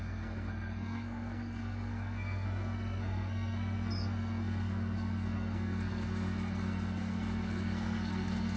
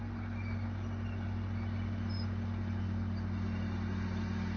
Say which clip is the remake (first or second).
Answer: first